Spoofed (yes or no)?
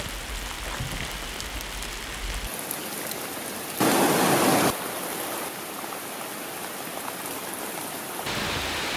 no